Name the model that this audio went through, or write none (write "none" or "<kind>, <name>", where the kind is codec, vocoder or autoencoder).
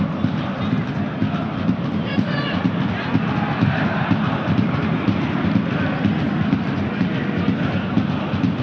none